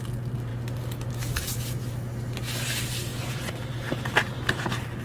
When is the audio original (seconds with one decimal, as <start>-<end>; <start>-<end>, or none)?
0.0-5.0